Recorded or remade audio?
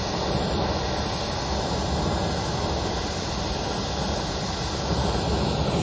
recorded